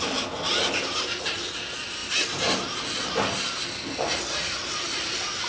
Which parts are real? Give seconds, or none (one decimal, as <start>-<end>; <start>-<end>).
0.0-5.5